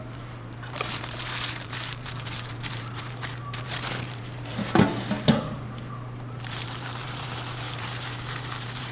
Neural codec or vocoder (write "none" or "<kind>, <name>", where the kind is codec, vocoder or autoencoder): vocoder, BigVGAN v2